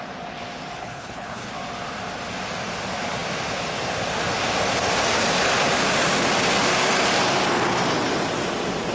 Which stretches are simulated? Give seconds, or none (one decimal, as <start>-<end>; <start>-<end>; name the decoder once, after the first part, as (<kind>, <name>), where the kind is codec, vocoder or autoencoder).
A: 0.8-1.5 (codec, HILCodec)